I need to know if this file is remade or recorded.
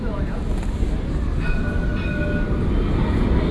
recorded